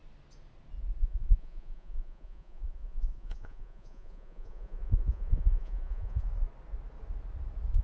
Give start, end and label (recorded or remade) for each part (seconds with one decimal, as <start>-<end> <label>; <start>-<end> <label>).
0.0-1.0 recorded; 1.0-6.3 remade; 6.3-7.8 recorded